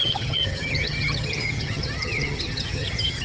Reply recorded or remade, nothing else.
remade